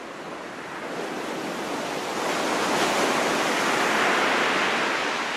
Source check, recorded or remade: recorded